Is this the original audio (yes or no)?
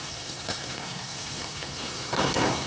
no